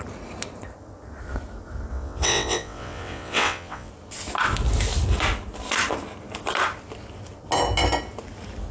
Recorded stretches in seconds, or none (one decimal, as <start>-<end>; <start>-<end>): 0.0-1.9; 3.9-8.7